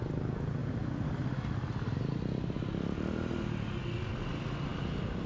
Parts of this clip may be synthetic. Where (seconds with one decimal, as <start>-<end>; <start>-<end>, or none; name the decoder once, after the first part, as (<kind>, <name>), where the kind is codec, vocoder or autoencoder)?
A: none